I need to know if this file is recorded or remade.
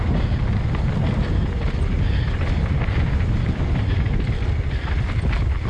recorded